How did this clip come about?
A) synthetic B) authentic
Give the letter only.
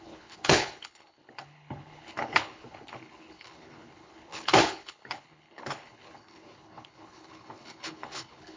A